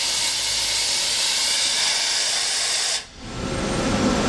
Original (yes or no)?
yes